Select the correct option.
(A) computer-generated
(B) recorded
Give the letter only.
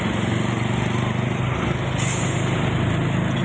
B